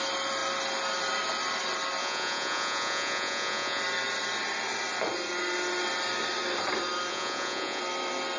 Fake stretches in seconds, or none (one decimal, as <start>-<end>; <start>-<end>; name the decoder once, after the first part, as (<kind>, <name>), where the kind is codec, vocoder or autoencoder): 2.0-3.8 (vocoder, Vocos); 7.1-7.8